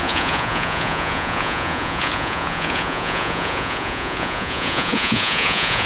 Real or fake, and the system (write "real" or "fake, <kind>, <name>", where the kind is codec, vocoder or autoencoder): fake, vocoder, Vocos